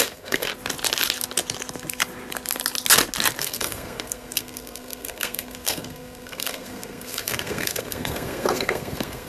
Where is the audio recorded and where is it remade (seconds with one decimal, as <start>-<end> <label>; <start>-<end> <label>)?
0.0-0.5 remade; 0.5-3.4 recorded; 3.4-9.3 remade